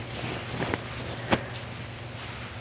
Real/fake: real